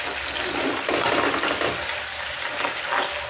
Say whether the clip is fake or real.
real